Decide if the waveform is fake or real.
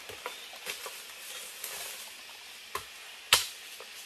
real